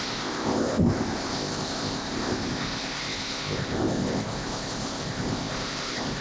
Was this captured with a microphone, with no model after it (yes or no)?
no